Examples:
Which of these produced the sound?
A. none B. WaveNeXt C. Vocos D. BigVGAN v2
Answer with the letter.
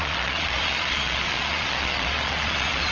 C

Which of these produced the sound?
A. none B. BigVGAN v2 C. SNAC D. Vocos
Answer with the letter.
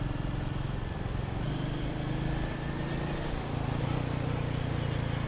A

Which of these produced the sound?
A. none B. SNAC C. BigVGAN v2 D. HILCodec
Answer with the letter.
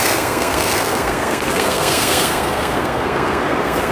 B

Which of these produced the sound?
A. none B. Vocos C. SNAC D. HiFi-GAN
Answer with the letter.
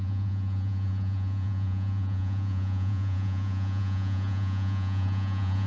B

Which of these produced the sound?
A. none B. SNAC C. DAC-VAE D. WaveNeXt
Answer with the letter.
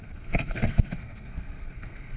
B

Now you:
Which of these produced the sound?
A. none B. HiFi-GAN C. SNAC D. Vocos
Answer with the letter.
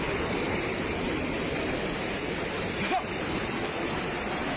A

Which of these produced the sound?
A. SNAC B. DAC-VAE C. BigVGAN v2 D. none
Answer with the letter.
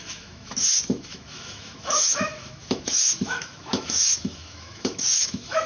B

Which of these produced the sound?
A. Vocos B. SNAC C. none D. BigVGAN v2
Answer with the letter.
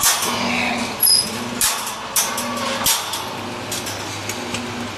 C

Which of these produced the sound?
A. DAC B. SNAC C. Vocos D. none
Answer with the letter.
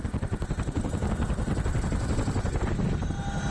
D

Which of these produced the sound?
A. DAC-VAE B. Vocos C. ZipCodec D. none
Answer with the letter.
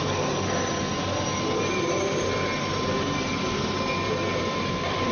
D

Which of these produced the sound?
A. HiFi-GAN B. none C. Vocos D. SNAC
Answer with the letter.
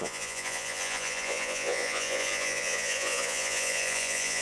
C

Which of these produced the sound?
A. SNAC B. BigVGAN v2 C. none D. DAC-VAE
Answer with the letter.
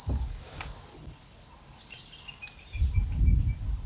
C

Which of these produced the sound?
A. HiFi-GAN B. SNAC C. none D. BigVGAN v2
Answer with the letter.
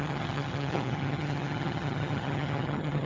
A